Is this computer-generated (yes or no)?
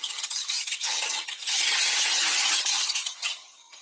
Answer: yes